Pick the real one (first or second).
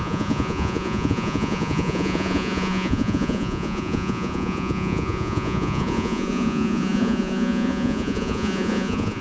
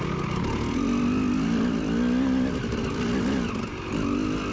second